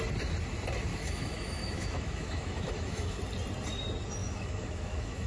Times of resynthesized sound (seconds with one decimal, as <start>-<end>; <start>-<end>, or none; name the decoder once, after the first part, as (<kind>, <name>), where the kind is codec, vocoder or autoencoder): 0.9-3.2 (autoencoder, DAC-VAE); 4.2-5.3